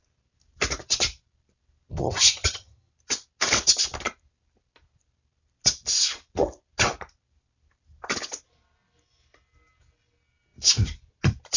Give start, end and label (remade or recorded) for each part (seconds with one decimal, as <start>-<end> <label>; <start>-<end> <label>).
0.0-2.0 recorded; 2.0-2.9 remade; 2.9-11.6 recorded